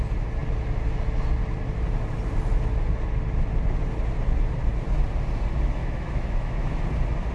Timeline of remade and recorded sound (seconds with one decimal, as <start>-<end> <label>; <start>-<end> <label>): 0.0-5.8 recorded; 5.8-6.8 remade; 6.8-7.3 recorded